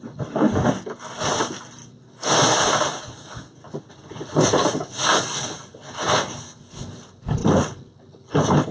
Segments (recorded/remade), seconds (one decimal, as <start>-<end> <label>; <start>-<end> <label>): 0.0-8.7 recorded